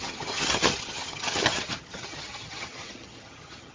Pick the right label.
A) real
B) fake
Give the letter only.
B